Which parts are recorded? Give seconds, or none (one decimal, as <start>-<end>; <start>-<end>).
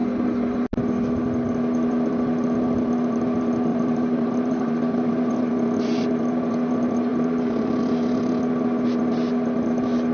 0.0-3.7; 5.3-7.1; 7.8-10.1